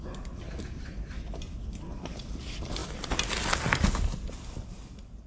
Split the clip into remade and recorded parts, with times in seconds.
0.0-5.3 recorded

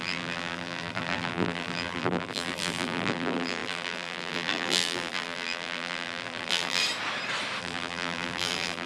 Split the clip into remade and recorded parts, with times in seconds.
0.0-6.8 remade; 6.8-7.6 recorded; 7.6-8.9 remade

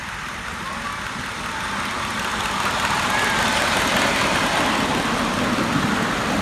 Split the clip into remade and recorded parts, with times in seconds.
0.0-0.7 remade; 0.7-2.3 recorded; 2.3-3.4 remade; 3.4-6.4 recorded

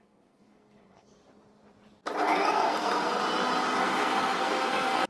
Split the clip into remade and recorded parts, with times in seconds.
0.0-1.2 remade; 1.2-2.2 recorded; 2.2-3.2 remade; 3.2-3.8 recorded; 3.8-5.1 remade

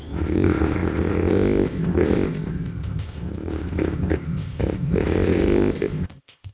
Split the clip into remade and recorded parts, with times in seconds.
0.0-6.5 remade

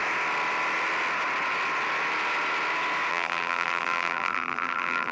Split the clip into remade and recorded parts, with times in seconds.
0.0-3.1 recorded; 3.1-5.1 remade